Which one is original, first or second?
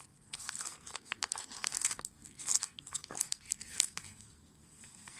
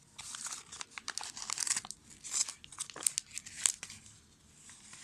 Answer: second